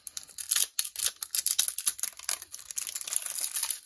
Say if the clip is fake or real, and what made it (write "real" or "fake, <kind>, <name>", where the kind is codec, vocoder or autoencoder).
real